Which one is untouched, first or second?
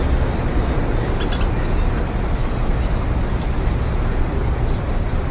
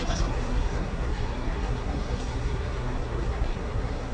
first